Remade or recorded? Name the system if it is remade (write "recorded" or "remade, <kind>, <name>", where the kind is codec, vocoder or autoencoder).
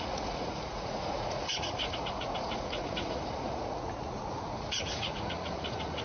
remade, vocoder, Vocos